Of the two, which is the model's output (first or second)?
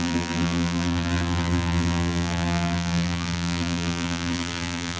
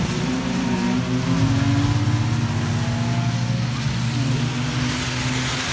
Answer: first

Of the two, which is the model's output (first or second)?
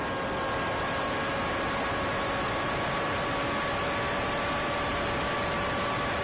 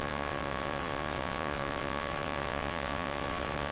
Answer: second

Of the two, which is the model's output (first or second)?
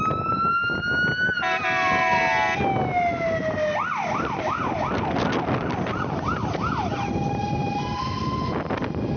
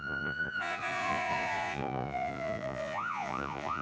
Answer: second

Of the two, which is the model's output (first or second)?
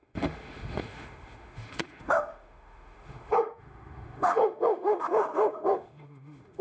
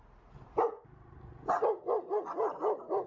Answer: first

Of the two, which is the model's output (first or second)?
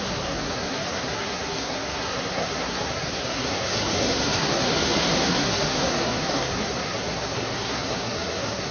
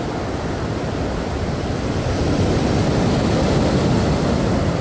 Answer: first